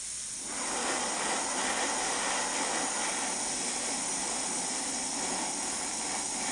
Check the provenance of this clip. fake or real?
real